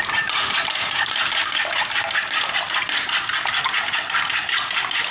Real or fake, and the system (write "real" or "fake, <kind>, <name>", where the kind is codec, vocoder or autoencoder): real